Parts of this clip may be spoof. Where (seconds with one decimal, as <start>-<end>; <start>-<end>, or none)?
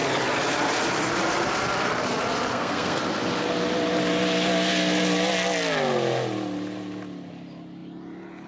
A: 2.5-3.0